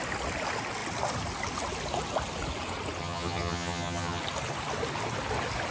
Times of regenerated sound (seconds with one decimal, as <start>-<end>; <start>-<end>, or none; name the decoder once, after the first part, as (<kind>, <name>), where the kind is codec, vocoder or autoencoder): 3.0-4.2 (vocoder, HiFi-GAN)